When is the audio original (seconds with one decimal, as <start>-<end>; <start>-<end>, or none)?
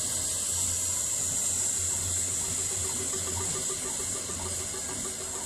0.0-5.5